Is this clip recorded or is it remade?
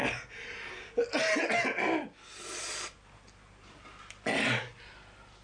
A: recorded